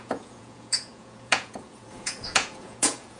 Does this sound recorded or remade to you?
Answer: remade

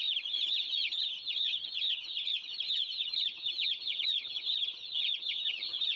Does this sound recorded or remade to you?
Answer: remade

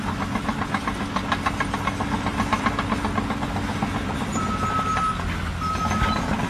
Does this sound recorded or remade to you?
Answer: recorded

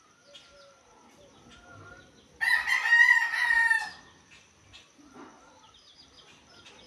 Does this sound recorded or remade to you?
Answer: recorded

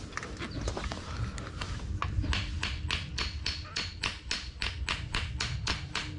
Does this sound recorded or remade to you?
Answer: recorded